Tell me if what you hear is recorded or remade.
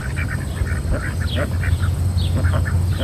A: recorded